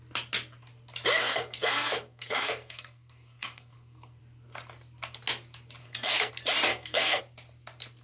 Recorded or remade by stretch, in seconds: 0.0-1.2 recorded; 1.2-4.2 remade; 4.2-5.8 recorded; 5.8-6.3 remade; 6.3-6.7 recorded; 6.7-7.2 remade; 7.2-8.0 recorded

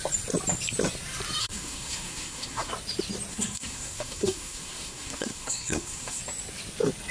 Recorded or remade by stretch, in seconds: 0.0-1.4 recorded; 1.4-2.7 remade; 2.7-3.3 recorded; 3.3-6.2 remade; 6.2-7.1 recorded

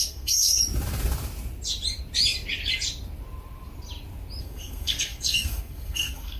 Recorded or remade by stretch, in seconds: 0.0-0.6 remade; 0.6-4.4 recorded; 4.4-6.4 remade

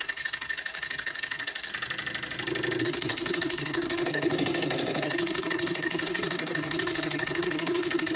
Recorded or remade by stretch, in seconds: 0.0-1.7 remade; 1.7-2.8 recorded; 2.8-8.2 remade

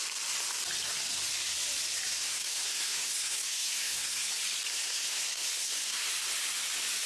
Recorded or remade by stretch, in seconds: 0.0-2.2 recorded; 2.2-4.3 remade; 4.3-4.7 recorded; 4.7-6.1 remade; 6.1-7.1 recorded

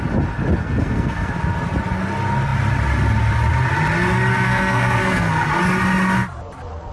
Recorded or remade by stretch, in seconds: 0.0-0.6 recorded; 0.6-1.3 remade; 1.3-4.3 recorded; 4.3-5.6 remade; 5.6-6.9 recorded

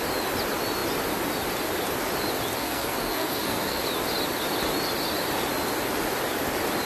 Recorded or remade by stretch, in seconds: 0.0-2.6 recorded; 2.6-3.8 remade; 3.8-6.9 recorded

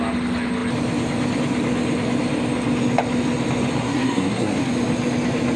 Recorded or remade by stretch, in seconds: 0.0-3.8 recorded; 3.8-4.7 remade; 4.7-5.6 recorded